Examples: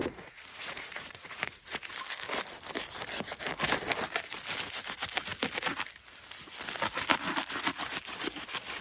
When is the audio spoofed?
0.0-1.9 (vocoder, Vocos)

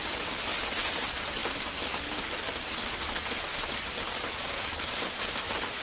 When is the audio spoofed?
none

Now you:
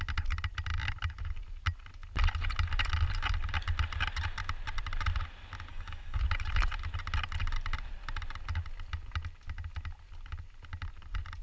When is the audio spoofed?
5.7-6.2 (codec, DAC)

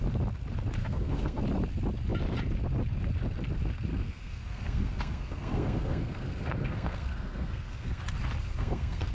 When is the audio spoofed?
0.8-1.4 (codec, SNAC); 3.9-8.0; 8.4-9.1